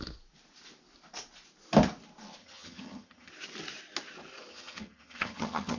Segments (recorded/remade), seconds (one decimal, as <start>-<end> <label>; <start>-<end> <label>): 0.0-2.4 recorded; 2.4-3.3 remade; 3.3-4.5 recorded; 4.5-5.8 remade